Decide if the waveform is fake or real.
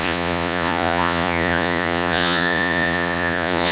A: fake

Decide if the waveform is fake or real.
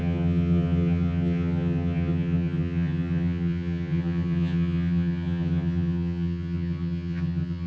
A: fake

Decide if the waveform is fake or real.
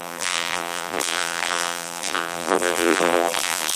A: fake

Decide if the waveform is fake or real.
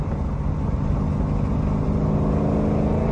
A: real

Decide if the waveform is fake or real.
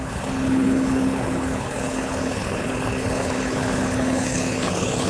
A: fake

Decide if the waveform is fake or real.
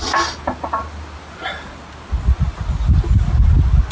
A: real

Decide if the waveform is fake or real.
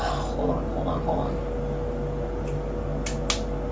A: real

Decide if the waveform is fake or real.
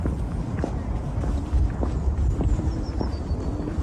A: real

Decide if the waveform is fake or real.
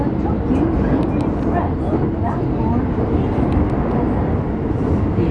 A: real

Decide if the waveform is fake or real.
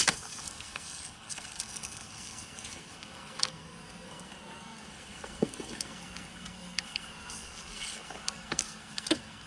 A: fake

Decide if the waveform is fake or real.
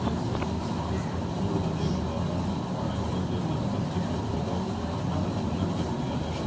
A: real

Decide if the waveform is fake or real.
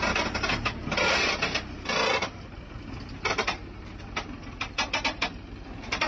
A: real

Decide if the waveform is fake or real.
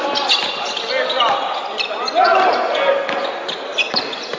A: real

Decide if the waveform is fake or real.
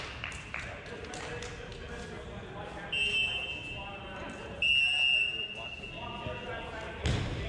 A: real